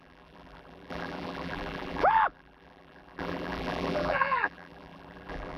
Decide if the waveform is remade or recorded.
remade